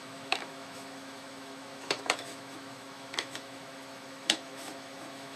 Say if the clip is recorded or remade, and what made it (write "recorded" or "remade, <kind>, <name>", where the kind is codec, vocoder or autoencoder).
remade, autoencoder, DAC-VAE